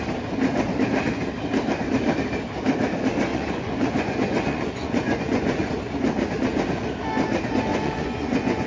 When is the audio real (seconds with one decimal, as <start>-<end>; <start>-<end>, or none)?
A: 0.0-3.3; 5.7-7.7